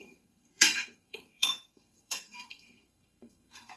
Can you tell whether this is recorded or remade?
remade